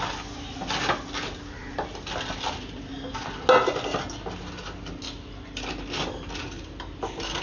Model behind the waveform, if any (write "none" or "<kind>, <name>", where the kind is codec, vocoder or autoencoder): none